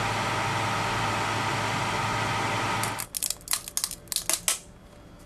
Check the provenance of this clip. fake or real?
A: real